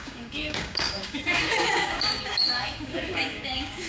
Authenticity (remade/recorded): remade